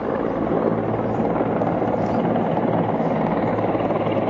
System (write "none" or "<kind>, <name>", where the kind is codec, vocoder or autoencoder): none